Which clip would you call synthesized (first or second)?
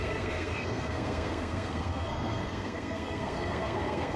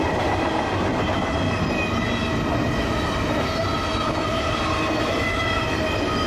first